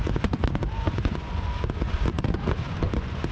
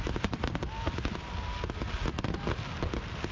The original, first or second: second